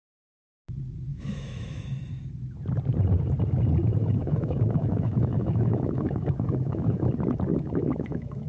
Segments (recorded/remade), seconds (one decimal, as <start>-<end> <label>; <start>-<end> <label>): 0.0-1.1 recorded; 1.1-1.8 remade; 1.8-4.0 recorded; 4.0-7.1 remade; 7.1-7.5 recorded; 7.5-8.5 remade